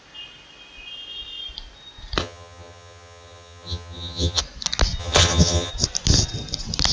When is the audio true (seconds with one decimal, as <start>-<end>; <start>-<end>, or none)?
0.0-2.2; 4.4-5.0; 5.7-6.9